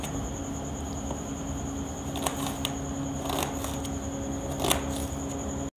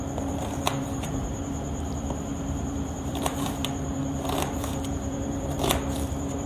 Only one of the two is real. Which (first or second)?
first